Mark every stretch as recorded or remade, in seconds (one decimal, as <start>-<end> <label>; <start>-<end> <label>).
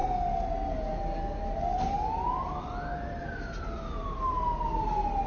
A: 0.0-5.3 recorded